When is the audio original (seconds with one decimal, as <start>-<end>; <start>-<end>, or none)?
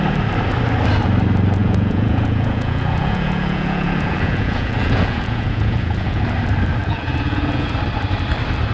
0.0-1.6; 6.2-6.8; 7.7-8.7